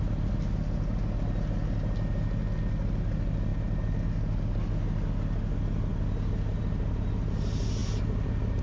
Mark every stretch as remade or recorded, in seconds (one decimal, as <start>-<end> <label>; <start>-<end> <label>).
0.0-8.6 recorded